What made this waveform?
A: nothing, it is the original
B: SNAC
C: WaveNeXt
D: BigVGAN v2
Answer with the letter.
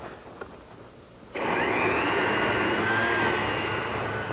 A